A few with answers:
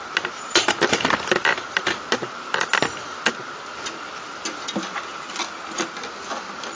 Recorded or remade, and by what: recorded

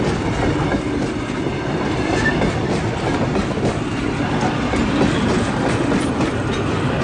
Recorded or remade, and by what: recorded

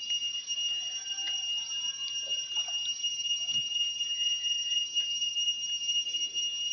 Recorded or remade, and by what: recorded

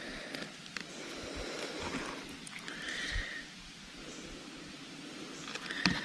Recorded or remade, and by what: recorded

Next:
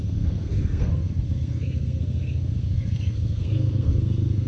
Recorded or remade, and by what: remade, codec, SNAC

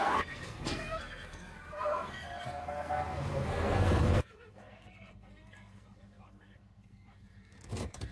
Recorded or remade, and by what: remade, codec, SNAC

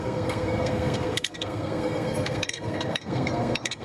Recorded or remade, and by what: remade, codec, SNAC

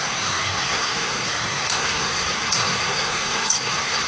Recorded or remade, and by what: remade, codec, SNAC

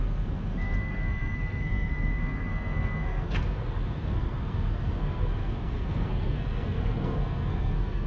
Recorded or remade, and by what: remade, codec, SNAC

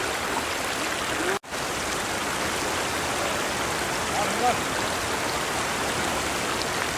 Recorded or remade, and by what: recorded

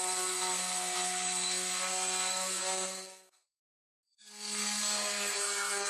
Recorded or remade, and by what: remade, codec, SNAC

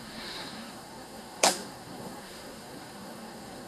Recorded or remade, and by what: remade, codec, SNAC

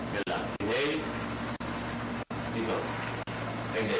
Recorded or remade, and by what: recorded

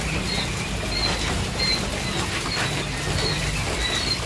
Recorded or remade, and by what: recorded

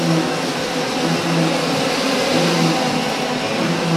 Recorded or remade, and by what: recorded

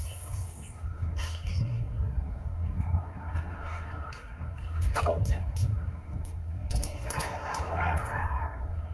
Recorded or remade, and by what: remade, codec, SNAC